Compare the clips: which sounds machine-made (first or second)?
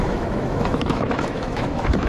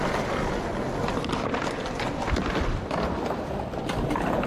first